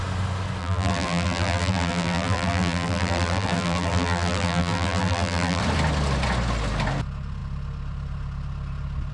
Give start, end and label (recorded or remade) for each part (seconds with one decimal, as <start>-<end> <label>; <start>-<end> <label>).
0.0-0.6 recorded; 0.6-5.6 remade; 5.6-9.1 recorded